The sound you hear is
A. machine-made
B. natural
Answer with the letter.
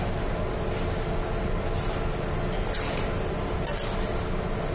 B